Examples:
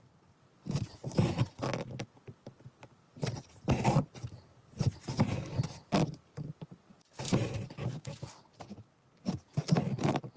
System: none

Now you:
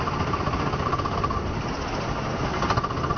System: none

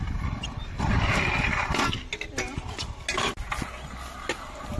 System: none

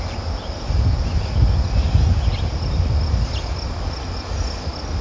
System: none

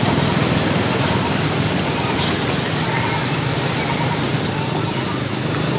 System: none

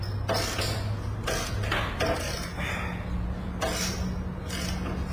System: none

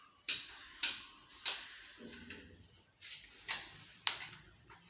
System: none